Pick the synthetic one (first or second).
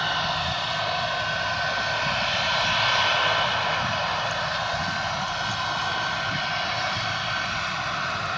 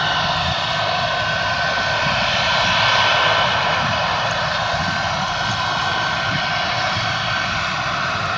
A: second